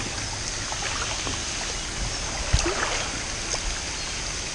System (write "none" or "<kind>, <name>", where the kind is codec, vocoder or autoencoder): none